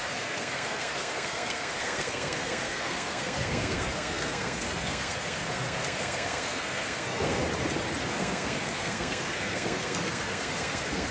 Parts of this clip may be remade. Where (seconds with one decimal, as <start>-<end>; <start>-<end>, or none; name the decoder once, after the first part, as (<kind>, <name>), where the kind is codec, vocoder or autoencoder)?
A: 0.0-7.4 (codec, SNAC); 8.1-11.1